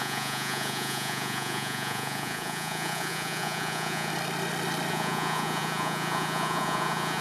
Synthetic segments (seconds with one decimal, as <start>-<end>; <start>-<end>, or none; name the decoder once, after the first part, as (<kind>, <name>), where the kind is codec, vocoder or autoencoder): 0.0-4.1 (vocoder, Vocos); 4.9-7.2